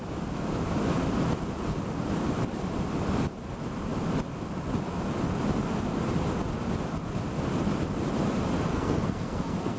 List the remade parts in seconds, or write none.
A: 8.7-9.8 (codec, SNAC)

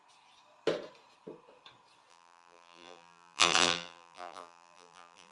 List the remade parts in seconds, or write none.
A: 2.1-5.3 (vocoder, BigVGAN v2)

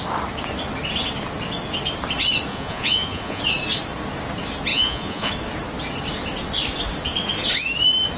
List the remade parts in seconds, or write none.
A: 2.5-3.4 (vocoder, Vocos); 4.7-5.3

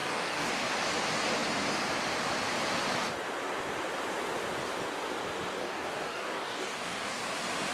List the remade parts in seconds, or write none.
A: 0.0-0.5 (codec, DAC); 5.6-7.2

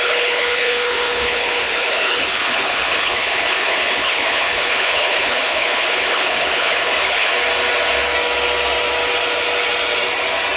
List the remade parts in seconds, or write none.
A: 0.0-7.3 (codec, HILCodec)

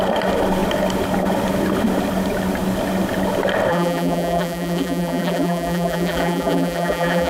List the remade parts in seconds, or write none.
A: 3.7-7.3 (vocoder, BigVGAN v2)

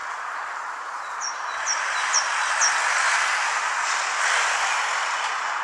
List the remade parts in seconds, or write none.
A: 0.6-2.4 (vocoder, BigVGAN v2)

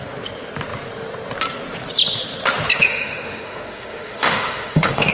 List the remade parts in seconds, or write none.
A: 2.7-5.1 (autoencoder, DAC-VAE)